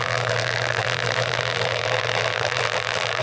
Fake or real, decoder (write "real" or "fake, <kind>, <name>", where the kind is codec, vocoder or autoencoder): fake, vocoder, BigVGAN v2